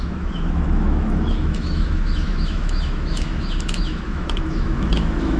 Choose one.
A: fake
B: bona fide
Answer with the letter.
A